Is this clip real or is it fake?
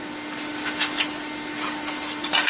real